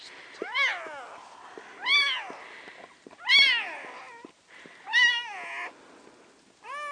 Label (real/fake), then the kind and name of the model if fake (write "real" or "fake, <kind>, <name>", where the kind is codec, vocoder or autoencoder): real